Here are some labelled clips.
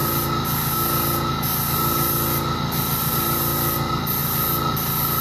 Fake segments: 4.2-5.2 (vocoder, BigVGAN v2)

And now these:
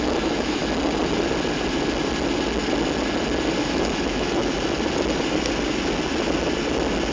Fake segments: 0.0-0.6 (autoencoder, DAC-VAE); 3.6-4.4

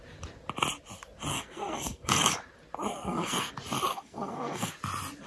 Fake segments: 1.3-2.1 (codec, SNAC); 2.9-3.5; 3.9-4.7

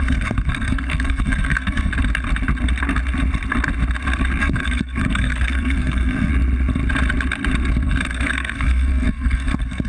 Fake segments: 0.0-1.9 (codec, SNAC); 4.4-6.3; 7.7-9.9

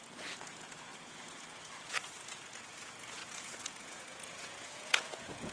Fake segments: 0.0-5.5 (vocoder, Vocos)

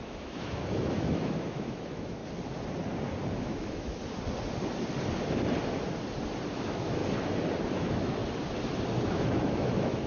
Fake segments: 0.0-2.2 (autoencoder, DAC-VAE); 3.4-4.0; 6.5-7.0; 7.8-8.2; 9.1-10.1

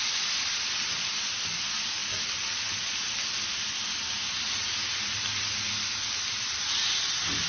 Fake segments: none

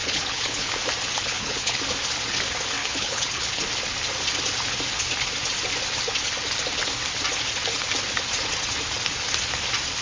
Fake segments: 0.0-0.7 (codec, HILCodec); 1.2-1.8; 2.8-3.6